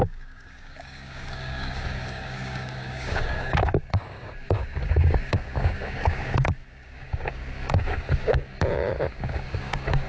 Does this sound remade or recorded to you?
remade